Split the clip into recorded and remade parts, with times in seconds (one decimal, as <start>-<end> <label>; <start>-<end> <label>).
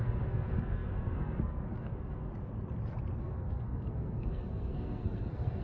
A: 0.0-2.3 remade; 2.3-3.2 recorded; 3.2-5.6 remade